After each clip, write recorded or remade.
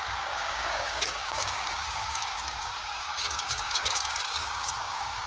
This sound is remade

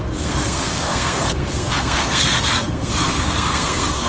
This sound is remade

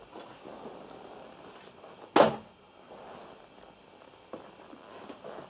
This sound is recorded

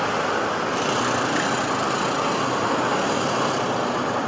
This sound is recorded